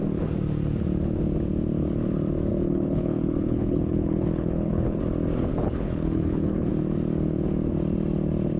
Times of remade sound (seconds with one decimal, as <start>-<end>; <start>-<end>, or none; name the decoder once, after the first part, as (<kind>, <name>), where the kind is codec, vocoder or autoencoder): 2.5-5.0 (codec, HILCodec); 5.5-6.7